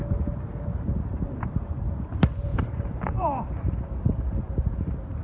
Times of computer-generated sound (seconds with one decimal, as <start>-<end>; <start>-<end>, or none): 1.1-2.1; 2.5-3.5